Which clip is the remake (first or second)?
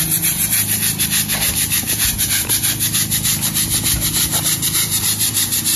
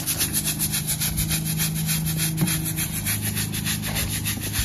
first